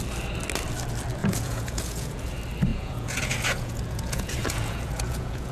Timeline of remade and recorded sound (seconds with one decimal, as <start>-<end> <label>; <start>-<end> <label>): 0.0-1.2 recorded; 1.2-2.3 remade; 2.3-2.7 recorded; 2.7-5.5 remade